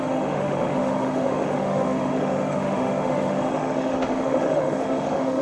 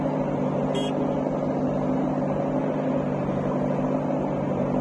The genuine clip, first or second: second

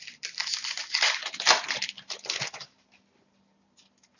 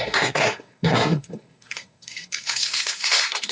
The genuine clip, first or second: first